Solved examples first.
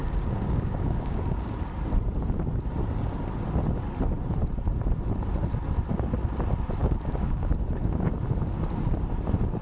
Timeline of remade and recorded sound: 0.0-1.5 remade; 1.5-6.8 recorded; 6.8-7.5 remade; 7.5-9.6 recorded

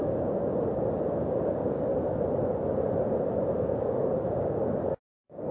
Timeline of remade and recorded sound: 0.0-0.5 remade; 0.5-1.2 recorded; 1.2-1.9 remade; 1.9-3.3 recorded; 3.3-5.5 remade

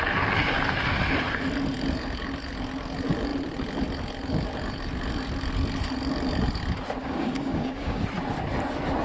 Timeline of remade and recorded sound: 0.0-7.0 recorded; 7.0-8.0 remade; 8.0-9.0 recorded

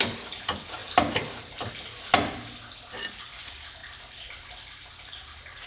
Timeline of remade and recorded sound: 0.0-5.7 recorded

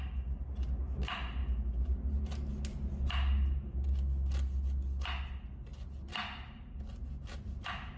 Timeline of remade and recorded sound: 0.0-8.0 recorded

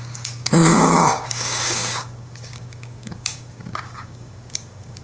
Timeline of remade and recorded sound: 0.0-5.0 remade